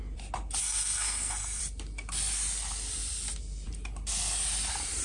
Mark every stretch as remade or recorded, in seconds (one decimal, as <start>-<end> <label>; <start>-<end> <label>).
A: 0.0-0.6 recorded; 0.6-1.6 remade; 1.6-5.0 recorded